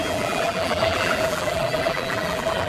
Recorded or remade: remade